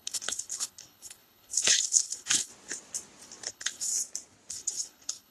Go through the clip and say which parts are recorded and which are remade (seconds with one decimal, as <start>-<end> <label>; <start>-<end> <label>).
0.0-2.5 remade; 2.5-3.5 recorded; 3.5-3.9 remade; 3.9-4.5 recorded; 4.5-5.3 remade